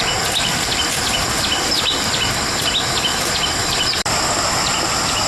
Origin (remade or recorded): recorded